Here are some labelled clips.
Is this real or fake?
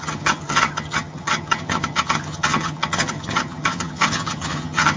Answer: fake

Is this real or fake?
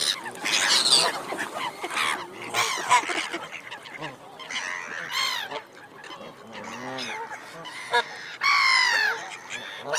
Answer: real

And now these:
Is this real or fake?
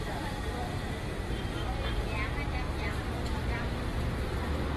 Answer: real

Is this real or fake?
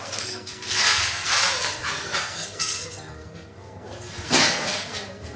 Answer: fake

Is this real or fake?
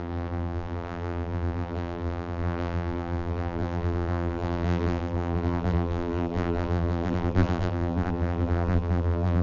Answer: fake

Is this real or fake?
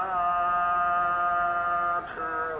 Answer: real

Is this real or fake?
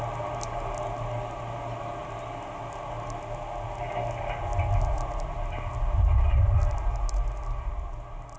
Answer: real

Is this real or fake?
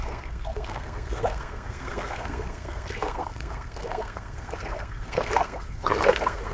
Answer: fake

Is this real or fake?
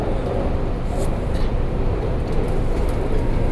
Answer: real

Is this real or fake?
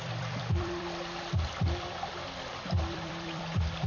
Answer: fake